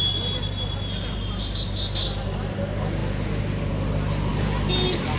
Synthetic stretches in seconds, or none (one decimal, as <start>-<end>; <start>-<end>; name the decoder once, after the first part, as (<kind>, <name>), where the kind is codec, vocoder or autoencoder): none